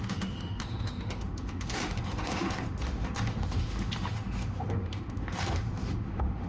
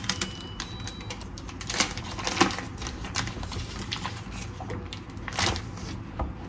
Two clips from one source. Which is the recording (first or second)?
second